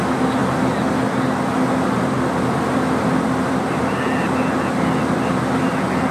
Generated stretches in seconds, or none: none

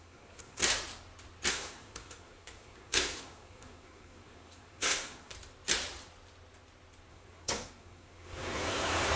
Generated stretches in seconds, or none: 0.0-0.6 (codec, SNAC); 1.5-5.3; 7.1-9.2

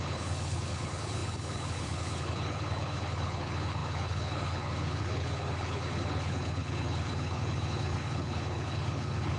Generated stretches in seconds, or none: 0.0-9.4 (codec, HILCodec)

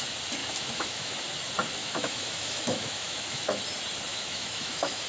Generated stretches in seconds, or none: 0.4-1.2 (autoencoder, DAC-VAE); 1.8-3.6; 4.1-5.1